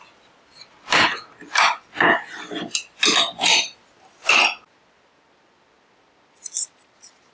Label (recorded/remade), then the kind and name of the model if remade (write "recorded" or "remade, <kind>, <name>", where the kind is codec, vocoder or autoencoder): recorded